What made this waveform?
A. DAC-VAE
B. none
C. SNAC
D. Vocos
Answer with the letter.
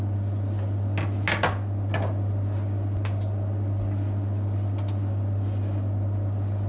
B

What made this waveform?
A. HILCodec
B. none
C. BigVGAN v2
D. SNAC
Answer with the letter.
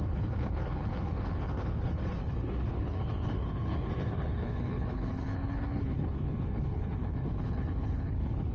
A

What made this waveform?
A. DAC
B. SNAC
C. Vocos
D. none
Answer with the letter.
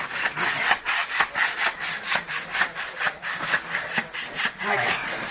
D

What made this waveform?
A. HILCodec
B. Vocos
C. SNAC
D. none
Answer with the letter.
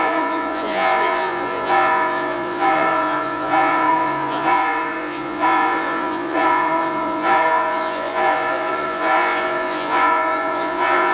B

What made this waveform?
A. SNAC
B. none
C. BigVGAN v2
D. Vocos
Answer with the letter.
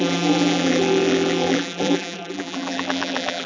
C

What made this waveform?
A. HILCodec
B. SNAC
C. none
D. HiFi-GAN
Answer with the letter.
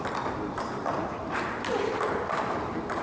C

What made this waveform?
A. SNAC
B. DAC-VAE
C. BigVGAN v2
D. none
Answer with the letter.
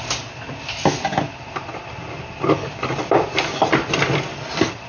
D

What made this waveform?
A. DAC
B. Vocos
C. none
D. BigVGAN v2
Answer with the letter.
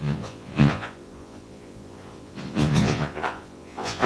B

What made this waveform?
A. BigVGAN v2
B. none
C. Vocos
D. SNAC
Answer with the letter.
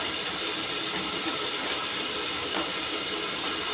B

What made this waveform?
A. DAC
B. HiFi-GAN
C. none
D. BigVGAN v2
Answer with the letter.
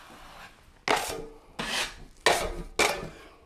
C